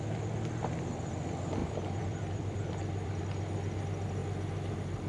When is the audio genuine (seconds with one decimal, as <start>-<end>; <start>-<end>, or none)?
0.0-1.6; 3.2-5.1